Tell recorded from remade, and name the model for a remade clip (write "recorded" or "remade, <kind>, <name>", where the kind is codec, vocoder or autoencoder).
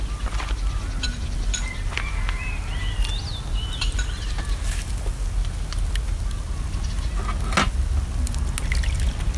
recorded